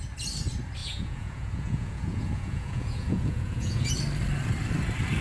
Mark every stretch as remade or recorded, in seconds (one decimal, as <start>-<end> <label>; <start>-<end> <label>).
0.0-0.8 recorded; 0.8-3.9 remade; 3.9-5.2 recorded